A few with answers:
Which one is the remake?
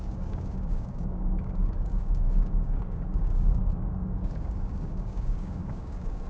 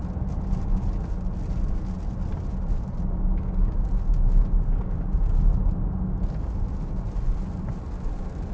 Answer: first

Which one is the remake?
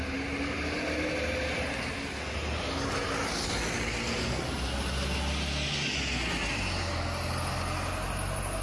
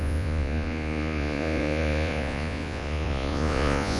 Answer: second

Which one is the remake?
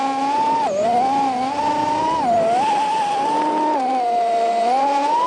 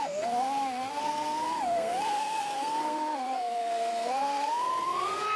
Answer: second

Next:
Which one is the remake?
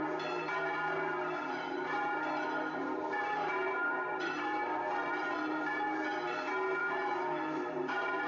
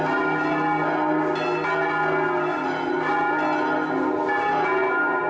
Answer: first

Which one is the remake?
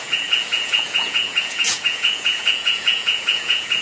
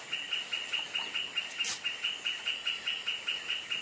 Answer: first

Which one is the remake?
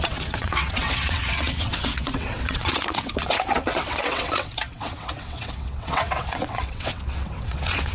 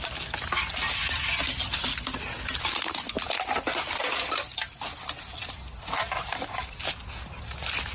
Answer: first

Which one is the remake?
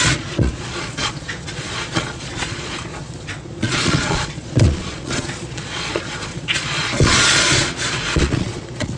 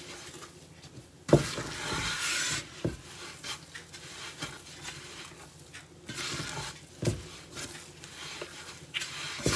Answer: first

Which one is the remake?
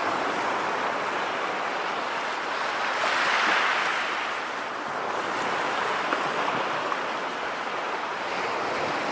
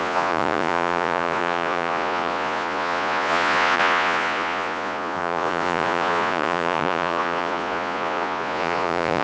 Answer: second